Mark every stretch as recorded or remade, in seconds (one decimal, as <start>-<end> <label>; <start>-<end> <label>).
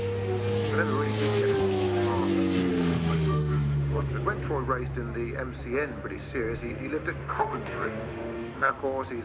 0.0-2.7 recorded; 2.7-4.1 remade; 4.1-7.2 recorded; 7.2-8.7 remade; 8.7-9.2 recorded